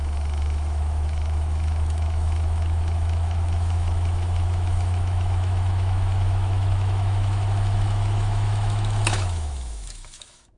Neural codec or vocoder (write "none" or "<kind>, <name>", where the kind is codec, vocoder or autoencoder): autoencoder, DAC-VAE